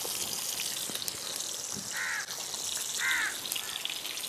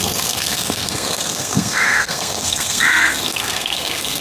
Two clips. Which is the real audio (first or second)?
first